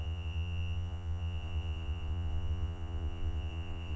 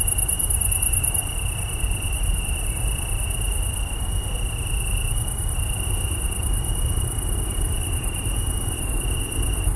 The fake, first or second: first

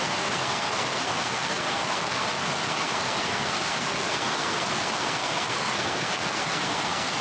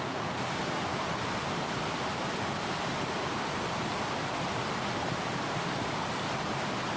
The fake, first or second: first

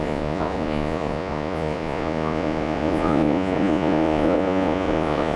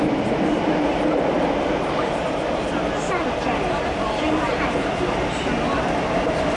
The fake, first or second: first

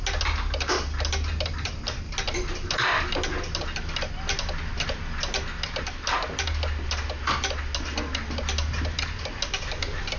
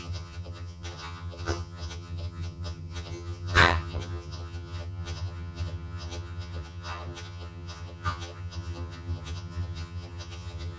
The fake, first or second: second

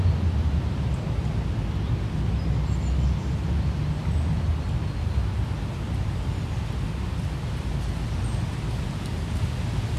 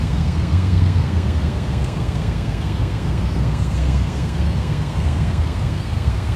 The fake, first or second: second